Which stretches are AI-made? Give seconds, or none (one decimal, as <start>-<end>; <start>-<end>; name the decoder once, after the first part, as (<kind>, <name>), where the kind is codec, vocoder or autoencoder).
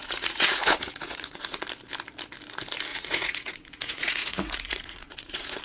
0.0-1.6 (vocoder, Vocos); 2.9-5.6